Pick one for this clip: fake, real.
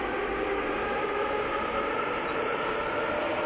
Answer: real